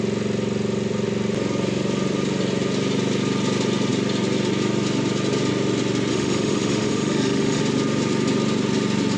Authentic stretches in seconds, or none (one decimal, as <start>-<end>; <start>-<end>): 0.0-6.1; 7.6-9.2